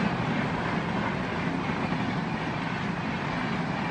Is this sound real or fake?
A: real